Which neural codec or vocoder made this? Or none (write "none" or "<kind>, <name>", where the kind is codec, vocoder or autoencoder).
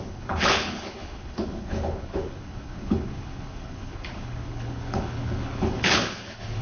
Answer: codec, HILCodec